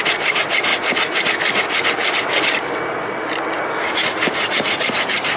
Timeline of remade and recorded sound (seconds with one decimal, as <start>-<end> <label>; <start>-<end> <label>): 0.0-5.4 recorded